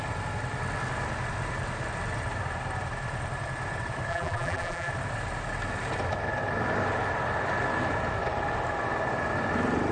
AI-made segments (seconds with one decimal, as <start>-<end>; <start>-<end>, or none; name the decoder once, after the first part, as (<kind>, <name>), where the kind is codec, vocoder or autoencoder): 4.1-4.9 (vocoder, BigVGAN v2)